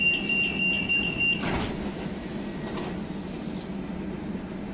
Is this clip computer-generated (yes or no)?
no